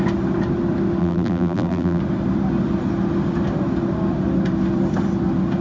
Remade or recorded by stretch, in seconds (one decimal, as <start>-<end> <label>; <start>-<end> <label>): 0.0-1.0 recorded; 1.0-2.0 remade; 2.0-5.6 recorded